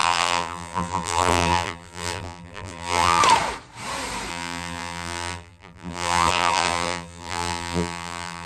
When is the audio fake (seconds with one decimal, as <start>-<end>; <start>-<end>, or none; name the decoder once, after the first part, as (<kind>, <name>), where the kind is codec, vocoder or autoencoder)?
0.0-3.2 (vocoder, BigVGAN v2); 4.3-8.5